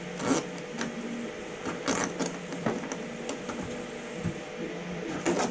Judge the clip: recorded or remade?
recorded